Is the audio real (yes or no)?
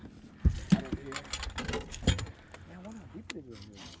yes